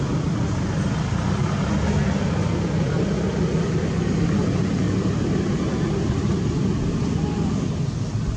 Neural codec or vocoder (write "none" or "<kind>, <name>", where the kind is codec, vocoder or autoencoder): none